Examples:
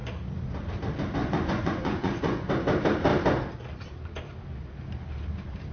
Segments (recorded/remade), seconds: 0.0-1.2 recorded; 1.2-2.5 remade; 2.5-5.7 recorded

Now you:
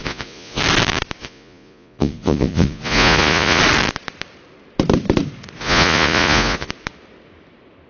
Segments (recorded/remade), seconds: 0.0-0.6 remade; 0.6-1.2 recorded; 1.2-3.6 remade; 3.6-5.6 recorded; 5.6-6.7 remade; 6.7-7.9 recorded